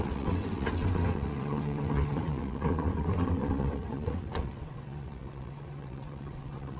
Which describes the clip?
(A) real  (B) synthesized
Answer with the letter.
B